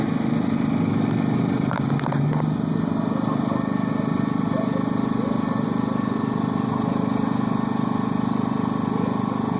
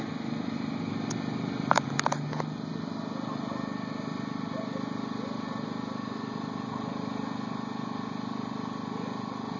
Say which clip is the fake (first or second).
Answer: first